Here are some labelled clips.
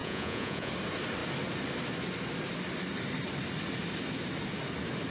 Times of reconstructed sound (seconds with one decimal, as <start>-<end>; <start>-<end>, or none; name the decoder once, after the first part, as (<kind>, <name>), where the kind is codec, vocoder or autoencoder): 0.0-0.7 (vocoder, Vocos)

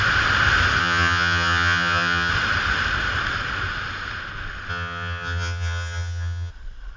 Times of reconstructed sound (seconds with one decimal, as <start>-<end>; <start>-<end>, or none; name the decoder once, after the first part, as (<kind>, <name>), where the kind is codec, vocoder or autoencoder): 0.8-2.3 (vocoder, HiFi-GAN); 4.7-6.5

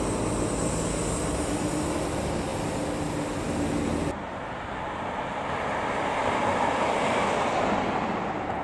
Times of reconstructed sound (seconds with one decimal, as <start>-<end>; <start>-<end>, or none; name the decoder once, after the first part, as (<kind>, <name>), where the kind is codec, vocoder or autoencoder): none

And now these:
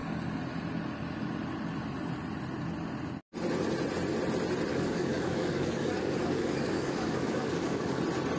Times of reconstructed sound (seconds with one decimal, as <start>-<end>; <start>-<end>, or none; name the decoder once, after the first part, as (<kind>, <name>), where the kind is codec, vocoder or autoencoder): 4.7-8.0 (codec, DAC)